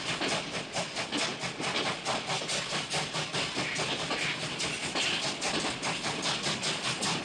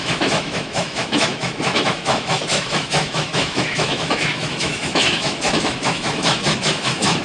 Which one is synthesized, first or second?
second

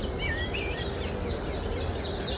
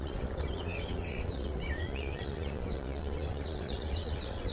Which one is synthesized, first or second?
second